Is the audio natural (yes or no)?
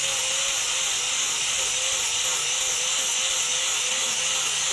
yes